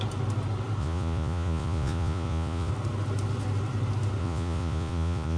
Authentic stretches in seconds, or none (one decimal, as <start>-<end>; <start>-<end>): 0.0-0.8; 2.7-4.2